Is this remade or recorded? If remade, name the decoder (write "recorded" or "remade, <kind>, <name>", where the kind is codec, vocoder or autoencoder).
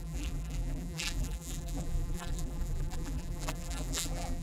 remade, vocoder, BigVGAN v2